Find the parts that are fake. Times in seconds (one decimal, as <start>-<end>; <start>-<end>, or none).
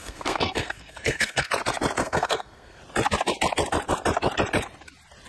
0.0-1.5; 2.0-2.8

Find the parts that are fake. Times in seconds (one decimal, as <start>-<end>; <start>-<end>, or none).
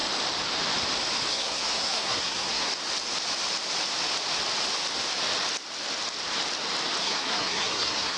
1.3-2.7; 7.0-8.2